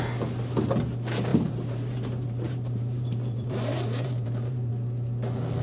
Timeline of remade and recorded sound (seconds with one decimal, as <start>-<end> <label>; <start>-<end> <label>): 0.0-1.3 recorded; 1.3-4.7 remade; 4.7-5.6 recorded